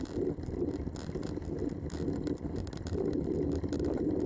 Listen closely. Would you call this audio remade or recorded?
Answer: remade